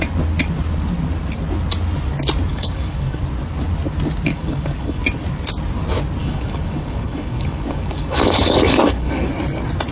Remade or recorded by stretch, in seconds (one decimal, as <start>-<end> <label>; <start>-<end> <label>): 0.0-2.5 recorded; 2.5-3.2 remade; 3.2-4.3 recorded; 4.3-5.0 remade; 5.0-6.2 recorded; 6.2-9.3 remade; 9.3-9.9 recorded